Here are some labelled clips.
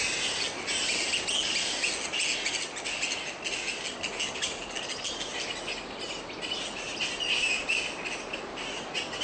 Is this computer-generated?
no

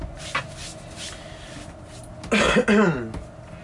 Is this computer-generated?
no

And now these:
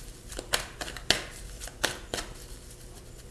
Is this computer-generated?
no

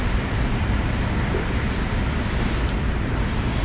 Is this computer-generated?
no